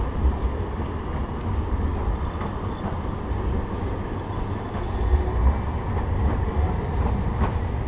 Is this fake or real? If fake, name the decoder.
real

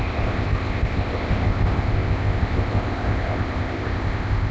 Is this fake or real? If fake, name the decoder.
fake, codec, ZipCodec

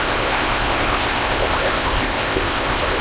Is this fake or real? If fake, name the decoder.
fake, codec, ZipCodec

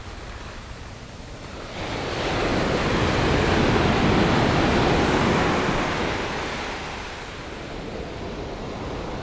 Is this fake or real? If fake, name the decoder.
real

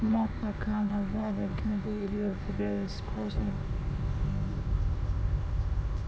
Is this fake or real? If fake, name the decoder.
fake, codec, ZipCodec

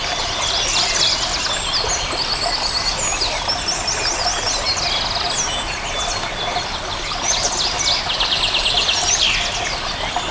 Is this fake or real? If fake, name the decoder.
real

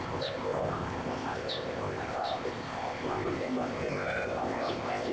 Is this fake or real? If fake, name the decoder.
fake, codec, ZipCodec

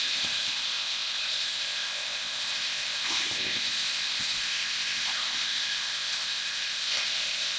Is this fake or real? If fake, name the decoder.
fake, codec, ZipCodec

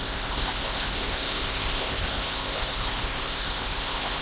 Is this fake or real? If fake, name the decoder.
fake, codec, ZipCodec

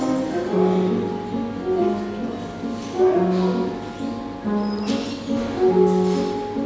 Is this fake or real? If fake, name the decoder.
real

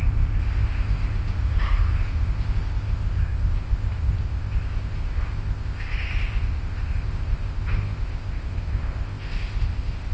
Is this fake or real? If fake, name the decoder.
fake, codec, ZipCodec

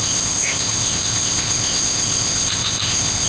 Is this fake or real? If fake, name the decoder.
fake, codec, ZipCodec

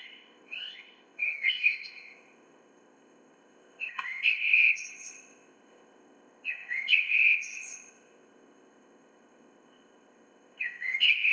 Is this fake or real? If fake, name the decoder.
fake, codec, ZipCodec